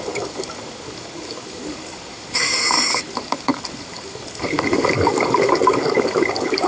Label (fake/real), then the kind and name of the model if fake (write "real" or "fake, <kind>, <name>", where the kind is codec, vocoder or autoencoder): fake, codec, DAC